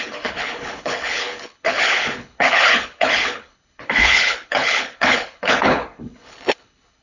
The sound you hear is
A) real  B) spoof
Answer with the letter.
B